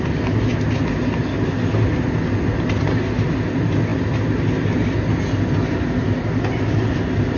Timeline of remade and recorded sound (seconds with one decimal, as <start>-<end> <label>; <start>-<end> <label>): 0.0-7.4 recorded